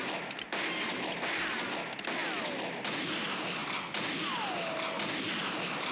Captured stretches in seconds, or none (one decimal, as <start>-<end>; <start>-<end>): 0.0-5.9